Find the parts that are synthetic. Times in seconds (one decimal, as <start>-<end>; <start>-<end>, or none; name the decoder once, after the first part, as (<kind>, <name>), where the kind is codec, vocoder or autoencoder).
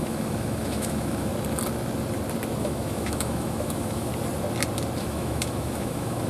0.0-1.3 (autoencoder, DAC-VAE); 2.6-4.1; 5.0-6.3